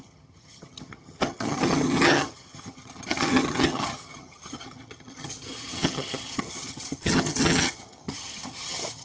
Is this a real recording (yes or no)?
no